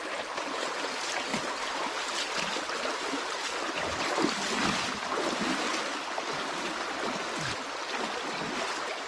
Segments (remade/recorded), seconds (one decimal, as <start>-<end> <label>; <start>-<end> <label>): 0.0-1.3 recorded; 1.3-2.2 remade; 2.2-9.1 recorded